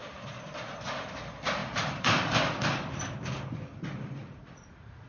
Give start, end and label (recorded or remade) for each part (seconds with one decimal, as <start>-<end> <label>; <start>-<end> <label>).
0.0-4.2 recorded; 4.2-5.1 remade